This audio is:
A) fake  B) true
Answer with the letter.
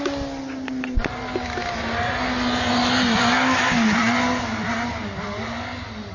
B